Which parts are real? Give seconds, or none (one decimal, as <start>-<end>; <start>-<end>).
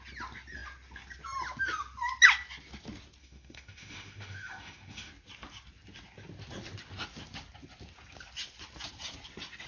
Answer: 0.0-3.2; 5.1-9.7